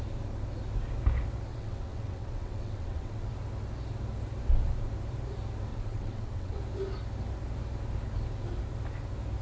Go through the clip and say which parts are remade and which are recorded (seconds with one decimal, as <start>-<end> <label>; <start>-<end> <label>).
0.0-1.5 recorded; 1.5-3.3 remade; 3.3-5.7 recorded; 5.7-6.6 remade; 6.6-9.4 recorded